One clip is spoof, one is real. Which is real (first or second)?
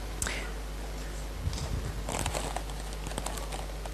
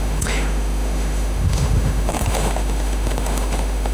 first